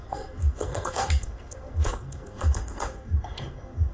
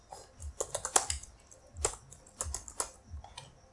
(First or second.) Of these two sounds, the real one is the second